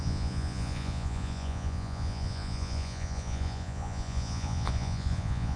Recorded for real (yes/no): no